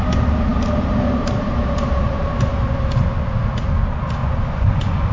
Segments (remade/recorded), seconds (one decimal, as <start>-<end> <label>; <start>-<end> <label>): 0.0-4.2 recorded; 4.2-5.1 remade